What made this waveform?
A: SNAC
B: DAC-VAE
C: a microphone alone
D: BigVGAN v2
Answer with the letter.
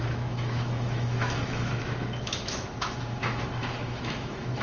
B